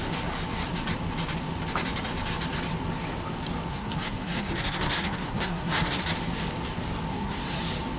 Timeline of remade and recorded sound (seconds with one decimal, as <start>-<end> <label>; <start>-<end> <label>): 0.0-3.7 recorded; 3.7-6.0 remade; 6.0-7.1 recorded; 7.1-7.6 remade; 7.6-8.0 recorded

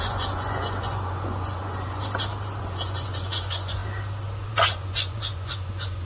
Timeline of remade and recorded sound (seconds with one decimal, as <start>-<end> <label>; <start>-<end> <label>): 0.0-2.0 remade; 2.0-2.6 recorded; 2.6-3.8 remade; 3.8-4.4 recorded; 4.4-6.0 remade

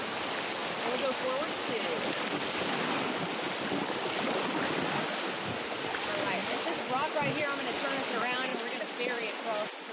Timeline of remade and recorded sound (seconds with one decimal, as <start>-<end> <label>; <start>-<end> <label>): 0.0-9.9 recorded

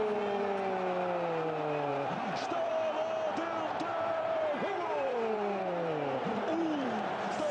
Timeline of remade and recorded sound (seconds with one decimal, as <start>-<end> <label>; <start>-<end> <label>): 0.0-1.9 recorded; 1.9-2.7 remade; 2.7-3.9 recorded; 3.9-7.5 remade

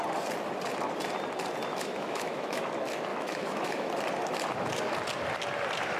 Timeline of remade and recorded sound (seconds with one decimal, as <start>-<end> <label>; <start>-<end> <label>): 0.0-1.7 recorded; 1.7-2.6 remade; 2.6-3.1 recorded; 3.1-3.9 remade; 3.9-6.0 recorded

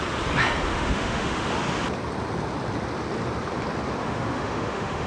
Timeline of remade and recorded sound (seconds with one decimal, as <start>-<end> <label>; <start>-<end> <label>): 0.0-0.7 recorded; 0.7-1.5 remade; 1.5-4.0 recorded; 4.0-5.1 remade

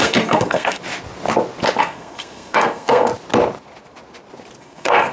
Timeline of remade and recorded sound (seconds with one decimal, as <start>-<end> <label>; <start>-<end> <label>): 0.0-0.8 remade; 0.8-1.8 recorded; 1.8-3.1 remade; 3.1-4.6 recorded; 4.6-5.1 remade